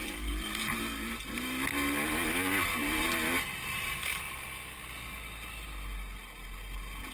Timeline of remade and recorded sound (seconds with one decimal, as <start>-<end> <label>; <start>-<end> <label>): 0.0-0.8 remade; 0.8-2.8 recorded; 2.8-4.2 remade; 4.2-7.1 recorded